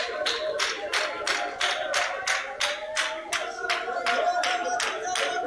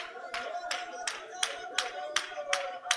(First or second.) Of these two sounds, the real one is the first